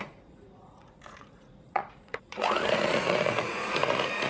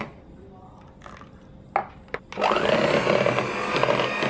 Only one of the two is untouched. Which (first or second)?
second